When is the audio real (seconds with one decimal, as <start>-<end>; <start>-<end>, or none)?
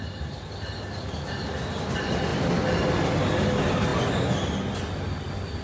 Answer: 0.0-5.6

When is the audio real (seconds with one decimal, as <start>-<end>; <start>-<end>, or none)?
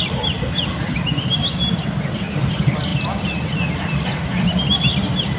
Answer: 0.0-5.4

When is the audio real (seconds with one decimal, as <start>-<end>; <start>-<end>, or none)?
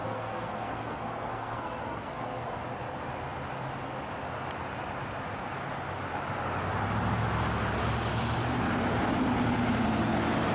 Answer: 2.6-10.5